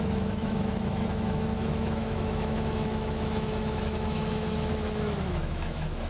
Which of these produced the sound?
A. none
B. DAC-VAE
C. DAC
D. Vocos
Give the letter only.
B